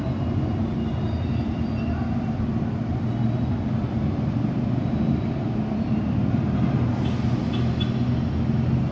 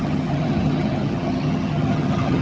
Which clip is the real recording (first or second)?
first